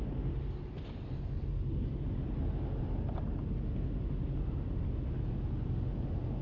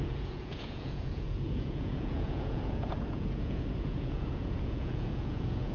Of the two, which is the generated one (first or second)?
second